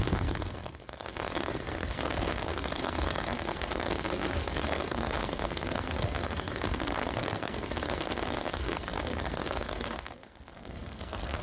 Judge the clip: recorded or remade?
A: remade